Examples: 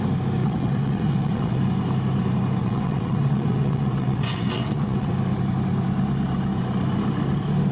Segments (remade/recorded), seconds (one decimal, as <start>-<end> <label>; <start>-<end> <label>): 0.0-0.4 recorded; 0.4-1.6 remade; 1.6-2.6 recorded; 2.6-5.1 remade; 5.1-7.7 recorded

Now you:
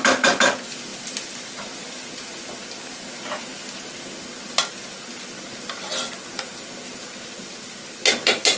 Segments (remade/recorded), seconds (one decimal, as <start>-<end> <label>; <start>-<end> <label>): 0.0-8.6 recorded

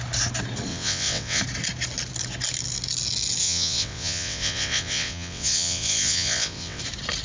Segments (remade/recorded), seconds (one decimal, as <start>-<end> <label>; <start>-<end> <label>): 0.0-0.7 recorded; 0.7-1.4 remade; 1.4-3.4 recorded; 3.4-6.8 remade; 6.8-7.2 recorded

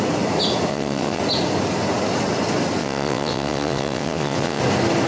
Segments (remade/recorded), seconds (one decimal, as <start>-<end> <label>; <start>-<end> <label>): 0.0-0.7 recorded; 0.7-1.2 remade; 1.2-2.8 recorded; 2.8-4.6 remade; 4.6-5.1 recorded

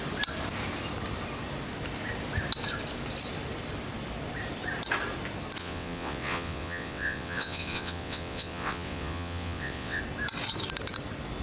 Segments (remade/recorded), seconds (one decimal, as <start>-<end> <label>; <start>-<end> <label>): 0.0-5.6 recorded; 5.6-10.0 remade; 10.0-11.4 recorded

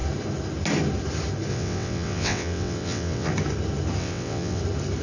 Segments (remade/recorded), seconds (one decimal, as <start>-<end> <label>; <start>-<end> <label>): 0.0-1.5 recorded; 1.5-3.3 remade; 3.3-4.0 recorded; 4.0-4.6 remade; 4.6-5.0 recorded

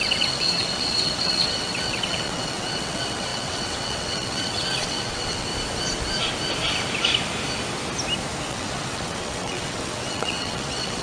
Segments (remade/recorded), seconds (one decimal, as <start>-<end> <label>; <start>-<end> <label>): 0.0-5.5 remade; 5.5-8.5 recorded; 8.5-11.0 remade

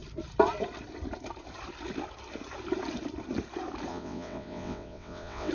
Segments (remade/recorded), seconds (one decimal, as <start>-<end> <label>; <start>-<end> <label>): 0.0-3.9 recorded; 3.9-5.5 remade